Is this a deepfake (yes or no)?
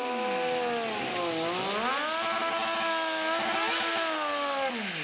no